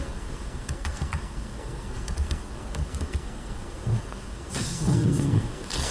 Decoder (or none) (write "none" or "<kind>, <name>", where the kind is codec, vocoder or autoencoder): codec, SNAC